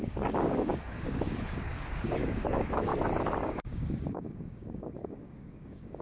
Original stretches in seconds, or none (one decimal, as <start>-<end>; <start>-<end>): 2.9-3.4